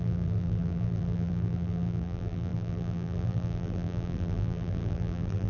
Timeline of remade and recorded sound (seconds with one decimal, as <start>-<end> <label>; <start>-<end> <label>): 0.0-5.5 remade